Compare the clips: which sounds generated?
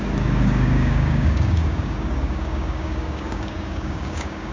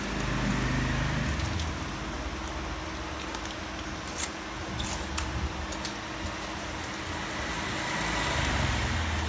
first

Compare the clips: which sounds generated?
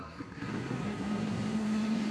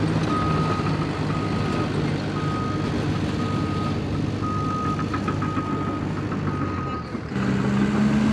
first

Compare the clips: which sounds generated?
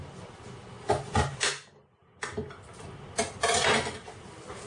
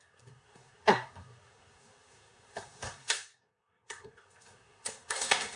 second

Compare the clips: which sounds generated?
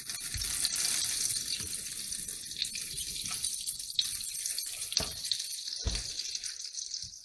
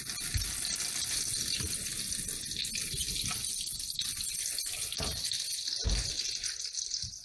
first